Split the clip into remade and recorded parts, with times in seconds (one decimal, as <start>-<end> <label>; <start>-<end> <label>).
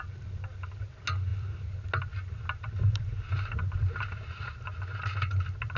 0.0-5.8 recorded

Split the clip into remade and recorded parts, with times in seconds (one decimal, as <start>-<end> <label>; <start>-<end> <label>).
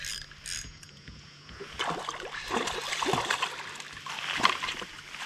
0.0-0.7 recorded; 0.7-1.8 remade; 1.8-5.3 recorded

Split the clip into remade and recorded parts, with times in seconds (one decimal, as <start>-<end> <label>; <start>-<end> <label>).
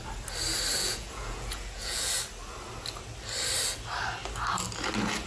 0.0-0.8 recorded; 0.8-2.1 remade; 2.1-5.3 recorded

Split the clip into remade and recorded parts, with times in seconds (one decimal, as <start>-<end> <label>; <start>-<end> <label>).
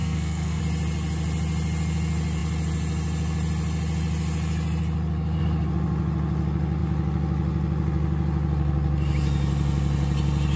0.0-0.6 remade; 0.6-10.6 recorded